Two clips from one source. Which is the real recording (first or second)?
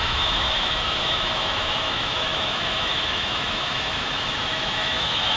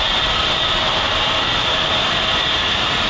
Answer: second